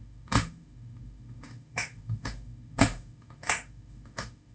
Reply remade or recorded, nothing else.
remade